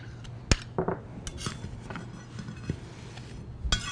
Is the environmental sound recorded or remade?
recorded